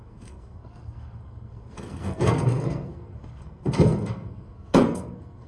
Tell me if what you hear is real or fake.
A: fake